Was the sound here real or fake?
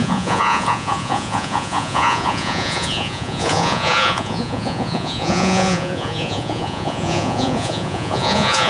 fake